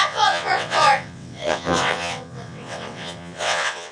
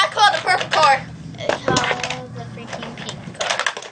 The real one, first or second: second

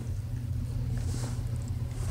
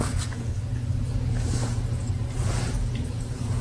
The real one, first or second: first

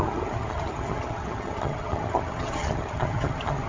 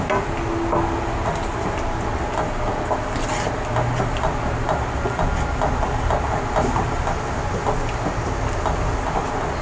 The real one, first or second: second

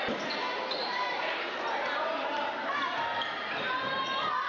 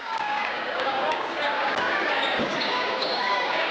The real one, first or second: first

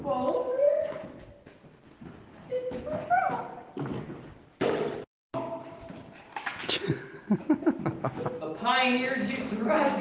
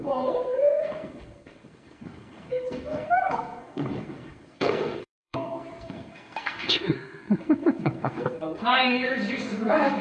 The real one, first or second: first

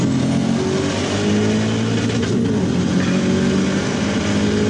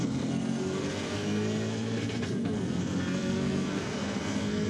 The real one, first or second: first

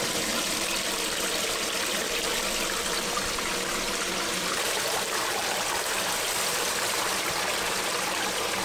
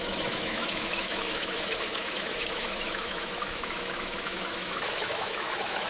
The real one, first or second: first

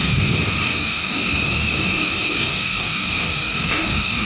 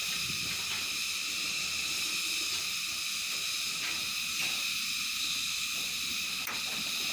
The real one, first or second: second